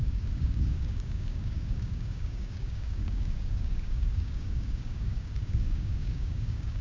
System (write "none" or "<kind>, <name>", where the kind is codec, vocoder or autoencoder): codec, DAC